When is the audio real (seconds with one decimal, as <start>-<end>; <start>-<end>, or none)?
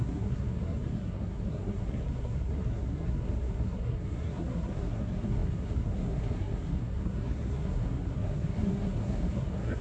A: none